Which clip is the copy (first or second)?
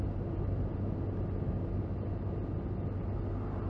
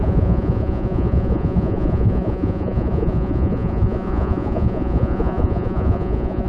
second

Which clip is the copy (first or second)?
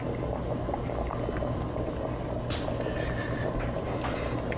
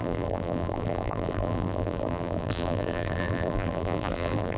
second